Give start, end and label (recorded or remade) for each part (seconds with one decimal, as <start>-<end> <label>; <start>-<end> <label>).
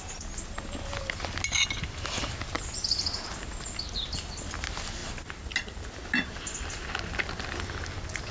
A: 0.0-8.3 recorded